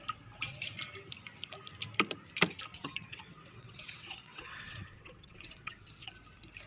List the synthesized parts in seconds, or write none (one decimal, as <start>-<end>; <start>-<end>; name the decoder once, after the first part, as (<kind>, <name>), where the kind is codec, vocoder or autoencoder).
2.7-6.1 (vocoder, WaveNeXt)